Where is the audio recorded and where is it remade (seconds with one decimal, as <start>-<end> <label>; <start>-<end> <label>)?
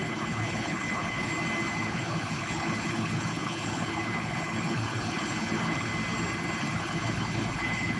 0.0-1.3 remade; 1.3-1.8 recorded; 1.8-5.9 remade; 5.9-6.6 recorded; 6.6-8.0 remade